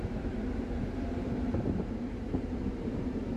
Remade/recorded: remade